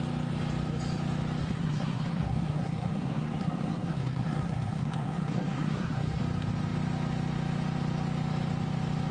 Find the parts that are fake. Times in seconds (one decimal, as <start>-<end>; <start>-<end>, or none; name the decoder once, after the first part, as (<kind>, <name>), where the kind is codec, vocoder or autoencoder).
1.4-6.2 (codec, SNAC)